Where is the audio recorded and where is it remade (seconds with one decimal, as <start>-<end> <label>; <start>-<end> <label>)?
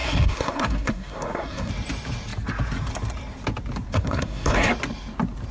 0.0-1.7 remade; 1.7-3.9 recorded; 3.9-4.7 remade; 4.7-5.5 recorded